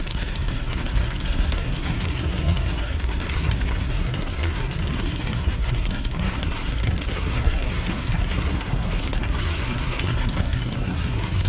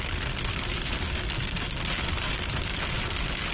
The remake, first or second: first